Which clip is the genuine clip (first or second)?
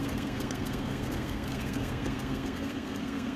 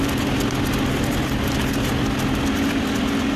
second